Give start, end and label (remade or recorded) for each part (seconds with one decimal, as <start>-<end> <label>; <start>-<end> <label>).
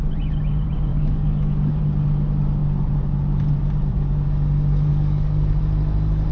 0.0-0.9 recorded; 0.9-1.8 remade; 1.8-4.9 recorded; 4.9-5.6 remade; 5.6-6.3 recorded